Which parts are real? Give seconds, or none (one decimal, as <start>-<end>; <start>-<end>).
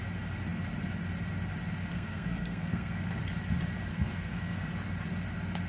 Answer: 0.0-1.9; 3.2-3.9; 4.6-5.7